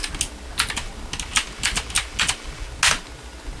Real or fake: real